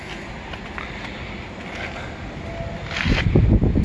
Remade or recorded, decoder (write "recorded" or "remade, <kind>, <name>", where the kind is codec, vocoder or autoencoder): recorded